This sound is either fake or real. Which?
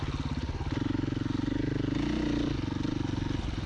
real